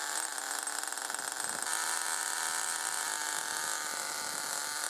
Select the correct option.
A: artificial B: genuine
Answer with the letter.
B